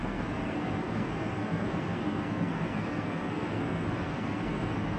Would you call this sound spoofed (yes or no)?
yes